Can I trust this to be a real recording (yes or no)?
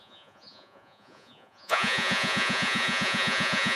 no